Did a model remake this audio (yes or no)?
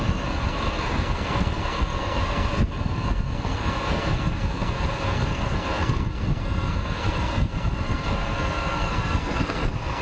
yes